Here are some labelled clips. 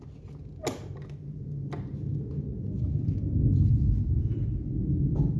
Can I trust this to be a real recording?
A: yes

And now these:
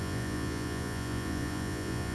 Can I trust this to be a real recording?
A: no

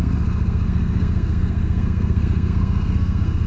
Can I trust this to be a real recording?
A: no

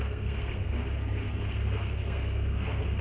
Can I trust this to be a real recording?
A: no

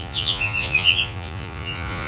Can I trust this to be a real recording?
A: no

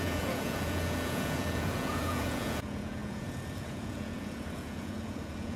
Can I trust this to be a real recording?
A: no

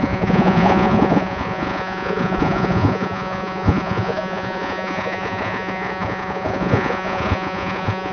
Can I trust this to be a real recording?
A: no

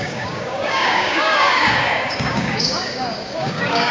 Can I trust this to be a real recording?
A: no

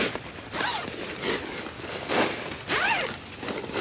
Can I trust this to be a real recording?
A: no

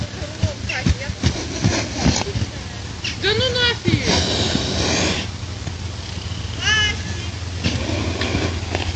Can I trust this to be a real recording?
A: yes